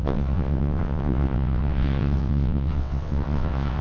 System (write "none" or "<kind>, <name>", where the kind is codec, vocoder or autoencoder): vocoder, WaveNeXt